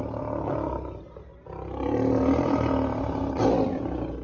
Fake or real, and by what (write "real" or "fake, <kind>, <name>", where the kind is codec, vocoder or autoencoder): real